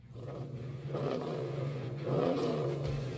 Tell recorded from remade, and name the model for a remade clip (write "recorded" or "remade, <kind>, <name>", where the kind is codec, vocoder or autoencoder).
remade, vocoder, Vocos